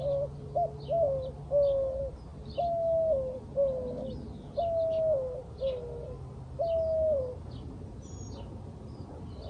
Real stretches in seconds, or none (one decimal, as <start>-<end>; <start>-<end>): 0.0-9.5